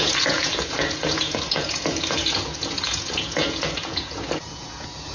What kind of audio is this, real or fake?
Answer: fake